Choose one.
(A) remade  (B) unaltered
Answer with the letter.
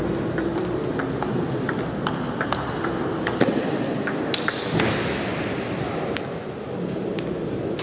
B